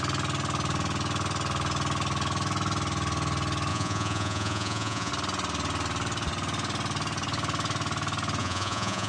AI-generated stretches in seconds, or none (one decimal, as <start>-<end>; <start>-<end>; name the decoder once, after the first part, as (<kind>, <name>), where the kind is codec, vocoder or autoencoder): 3.7-5.1 (vocoder, Vocos); 8.4-9.1